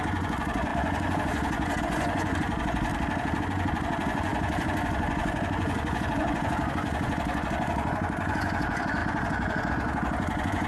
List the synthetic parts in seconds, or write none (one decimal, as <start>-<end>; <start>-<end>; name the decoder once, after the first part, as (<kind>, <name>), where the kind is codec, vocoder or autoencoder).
0.0-2.9 (vocoder, Vocos); 3.4-10.7